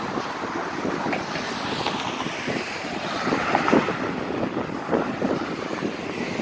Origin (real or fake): real